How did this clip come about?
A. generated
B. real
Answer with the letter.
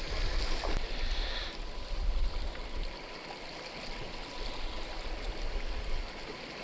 B